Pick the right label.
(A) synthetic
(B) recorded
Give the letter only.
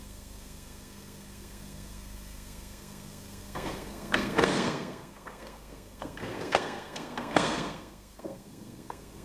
A